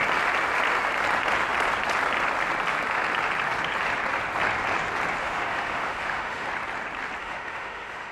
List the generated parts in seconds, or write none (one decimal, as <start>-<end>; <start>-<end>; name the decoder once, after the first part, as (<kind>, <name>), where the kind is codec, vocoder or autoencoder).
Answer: 5.2-6.5 (autoencoder, DAC-VAE); 7.2-8.1